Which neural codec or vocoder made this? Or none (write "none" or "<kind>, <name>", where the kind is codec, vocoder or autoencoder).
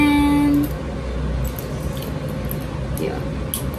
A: none